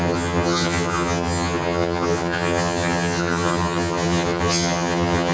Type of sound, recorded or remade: remade